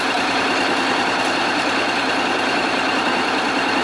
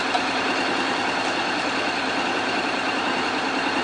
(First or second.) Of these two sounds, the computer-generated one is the first